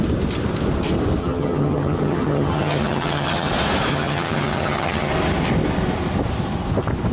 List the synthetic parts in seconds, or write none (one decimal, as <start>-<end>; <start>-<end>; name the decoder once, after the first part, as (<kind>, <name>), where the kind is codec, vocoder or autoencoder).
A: 1.2-3.5 (vocoder, HiFi-GAN); 3.9-5.1